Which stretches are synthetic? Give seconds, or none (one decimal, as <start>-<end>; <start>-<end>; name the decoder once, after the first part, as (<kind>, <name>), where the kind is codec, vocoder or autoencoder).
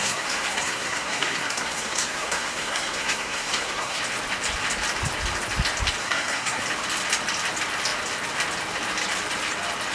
0.0-4.0 (codec, SNAC); 6.0-6.6